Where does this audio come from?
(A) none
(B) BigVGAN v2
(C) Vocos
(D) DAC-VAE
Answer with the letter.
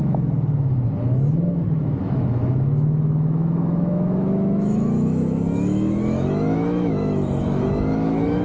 D